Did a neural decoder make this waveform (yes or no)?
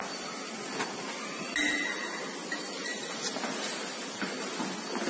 no